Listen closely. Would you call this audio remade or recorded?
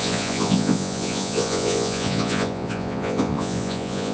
remade